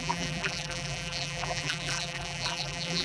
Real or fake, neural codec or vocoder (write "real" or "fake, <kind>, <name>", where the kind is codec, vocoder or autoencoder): fake, vocoder, BigVGAN v2